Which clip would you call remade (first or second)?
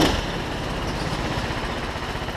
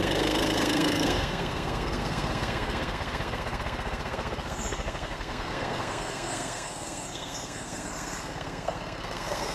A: second